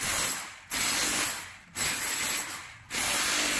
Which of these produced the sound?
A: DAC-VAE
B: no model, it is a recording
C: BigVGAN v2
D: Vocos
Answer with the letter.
B